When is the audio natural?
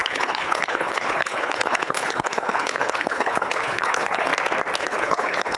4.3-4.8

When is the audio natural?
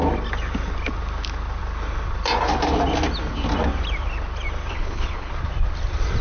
0.0-4.7; 5.3-6.2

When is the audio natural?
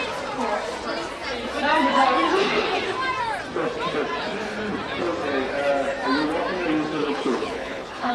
0.0-7.0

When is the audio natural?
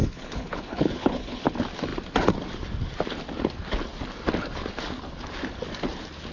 1.4-6.3